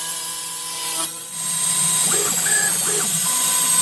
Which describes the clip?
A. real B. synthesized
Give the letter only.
B